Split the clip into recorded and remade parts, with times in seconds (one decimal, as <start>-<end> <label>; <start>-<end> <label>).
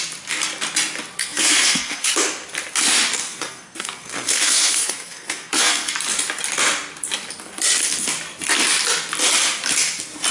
0.0-1.2 recorded; 1.2-2.1 remade; 2.1-3.2 recorded; 3.2-5.9 remade; 5.9-10.3 recorded